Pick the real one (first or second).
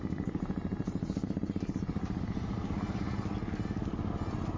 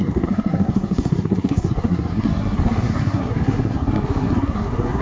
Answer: first